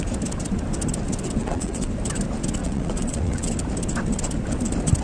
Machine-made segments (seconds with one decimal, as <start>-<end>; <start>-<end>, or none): 1.4-1.9; 2.6-3.5